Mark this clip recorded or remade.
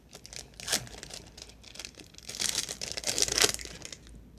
recorded